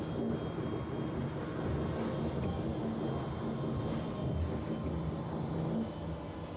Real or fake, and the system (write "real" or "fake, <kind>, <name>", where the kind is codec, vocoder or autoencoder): real